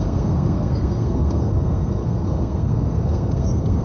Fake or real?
fake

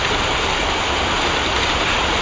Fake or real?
real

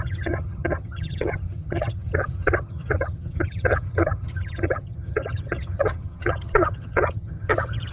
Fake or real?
fake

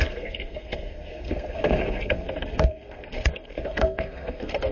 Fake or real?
fake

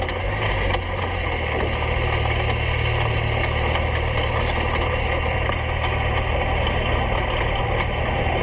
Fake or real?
real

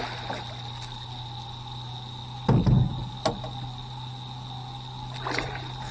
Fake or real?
real